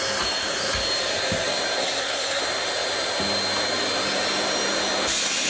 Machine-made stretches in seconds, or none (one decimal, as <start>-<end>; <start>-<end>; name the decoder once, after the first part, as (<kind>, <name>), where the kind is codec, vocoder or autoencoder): 1.8-2.4 (codec, SNAC)